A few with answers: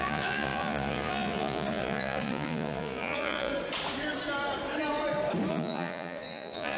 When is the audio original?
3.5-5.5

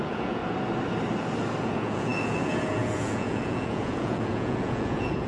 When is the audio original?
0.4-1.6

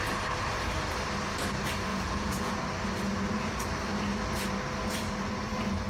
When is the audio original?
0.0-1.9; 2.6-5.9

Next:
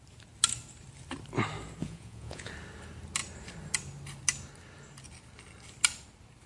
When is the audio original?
0.0-1.8; 2.5-6.5

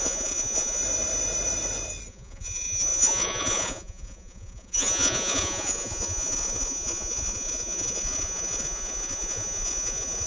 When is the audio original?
0.8-2.1

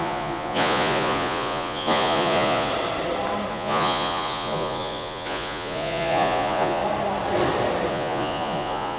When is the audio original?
2.7-3.5; 6.8-7.9

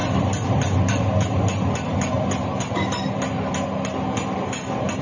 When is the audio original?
0.0-5.0

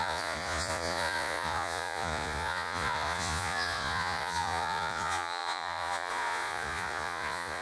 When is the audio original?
none